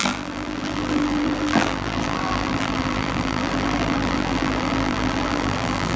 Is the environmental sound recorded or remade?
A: remade